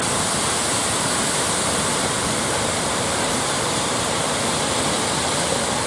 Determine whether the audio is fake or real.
real